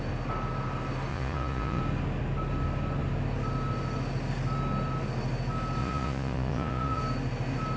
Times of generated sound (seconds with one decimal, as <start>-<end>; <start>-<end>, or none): 1.1-1.8; 5.8-7.0